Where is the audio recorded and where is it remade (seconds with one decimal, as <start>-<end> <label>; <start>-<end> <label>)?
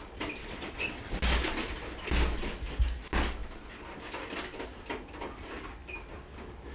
0.0-0.4 recorded; 0.4-1.1 remade; 1.1-6.7 recorded